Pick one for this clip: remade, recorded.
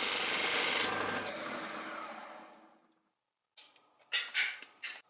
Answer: recorded